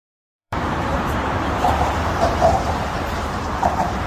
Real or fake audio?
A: fake